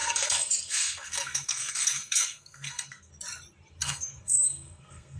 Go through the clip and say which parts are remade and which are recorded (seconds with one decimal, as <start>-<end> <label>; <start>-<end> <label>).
0.0-3.1 remade; 3.1-3.8 recorded; 3.8-5.2 remade

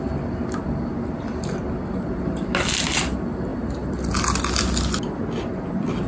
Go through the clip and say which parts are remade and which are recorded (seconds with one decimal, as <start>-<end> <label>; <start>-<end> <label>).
0.0-6.1 recorded

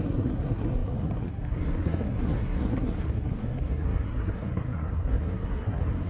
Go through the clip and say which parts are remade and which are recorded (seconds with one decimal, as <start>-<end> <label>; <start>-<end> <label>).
0.0-6.1 remade

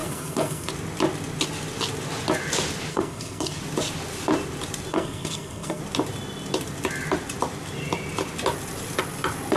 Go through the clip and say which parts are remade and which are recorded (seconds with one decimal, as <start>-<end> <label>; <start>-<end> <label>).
0.0-0.7 remade; 0.7-2.9 recorded; 2.9-3.6 remade; 3.6-4.9 recorded; 4.9-5.8 remade; 5.8-9.6 recorded